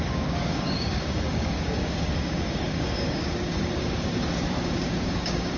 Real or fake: fake